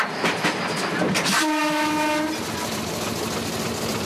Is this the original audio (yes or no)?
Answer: yes